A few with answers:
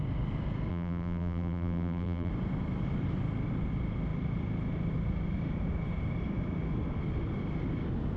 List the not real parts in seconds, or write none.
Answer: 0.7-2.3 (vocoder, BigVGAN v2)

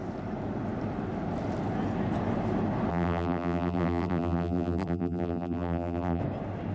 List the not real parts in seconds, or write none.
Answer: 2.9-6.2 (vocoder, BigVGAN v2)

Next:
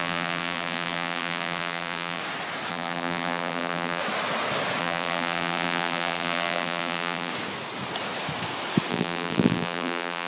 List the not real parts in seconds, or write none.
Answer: 0.0-2.2 (vocoder, BigVGAN v2); 2.7-4.0; 4.8-7.3; 8.9-10.3

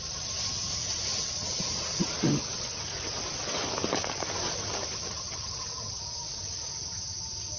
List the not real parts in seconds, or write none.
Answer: 0.0-2.5 (vocoder, BigVGAN v2); 3.8-7.6

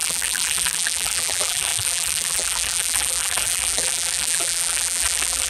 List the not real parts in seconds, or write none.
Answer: 0.0-5.5 (vocoder, BigVGAN v2)